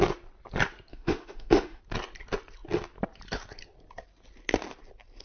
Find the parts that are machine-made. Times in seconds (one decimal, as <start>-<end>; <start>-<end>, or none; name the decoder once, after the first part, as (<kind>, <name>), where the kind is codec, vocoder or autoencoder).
0.9-1.8 (autoencoder, DAC-VAE)

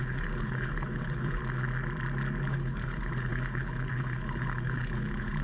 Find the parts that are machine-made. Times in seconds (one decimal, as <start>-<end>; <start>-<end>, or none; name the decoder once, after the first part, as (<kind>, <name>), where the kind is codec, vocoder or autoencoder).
0.0-1.4 (codec, HILCodec); 2.5-5.4